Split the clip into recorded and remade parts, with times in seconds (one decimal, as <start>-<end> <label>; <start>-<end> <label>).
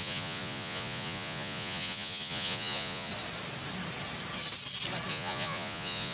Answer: 0.0-3.1 remade; 3.1-5.1 recorded; 5.1-6.1 remade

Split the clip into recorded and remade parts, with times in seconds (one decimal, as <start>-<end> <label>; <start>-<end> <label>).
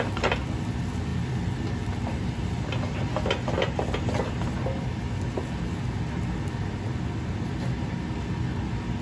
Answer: 0.0-9.0 recorded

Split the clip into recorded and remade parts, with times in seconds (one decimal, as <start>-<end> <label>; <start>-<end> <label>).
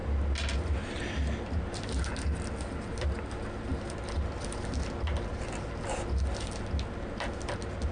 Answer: 0.0-7.9 recorded